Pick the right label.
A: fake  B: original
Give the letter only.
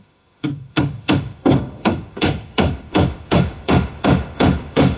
A